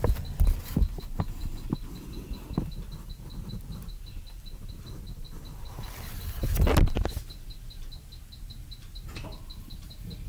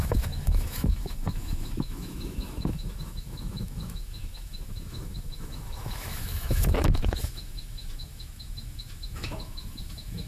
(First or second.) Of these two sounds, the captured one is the first